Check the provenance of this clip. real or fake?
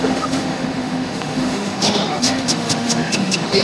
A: fake